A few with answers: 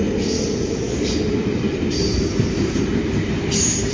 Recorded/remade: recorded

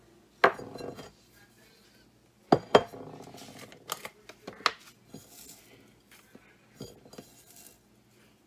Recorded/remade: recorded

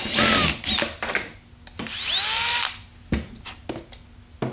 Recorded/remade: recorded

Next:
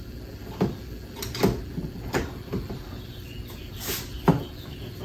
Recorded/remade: recorded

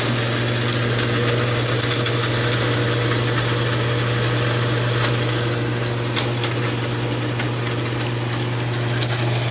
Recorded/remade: recorded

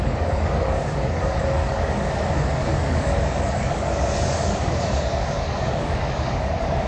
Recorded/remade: remade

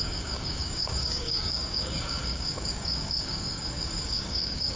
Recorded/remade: remade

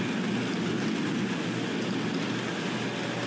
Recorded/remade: recorded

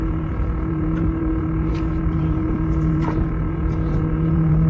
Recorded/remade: remade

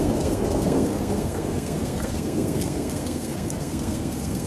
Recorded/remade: remade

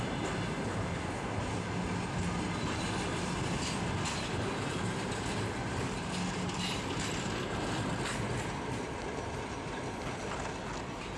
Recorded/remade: recorded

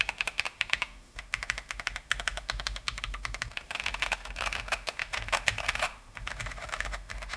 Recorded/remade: remade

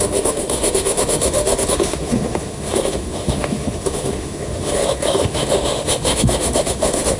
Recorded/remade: remade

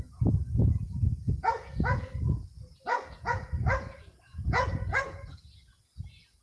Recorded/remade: remade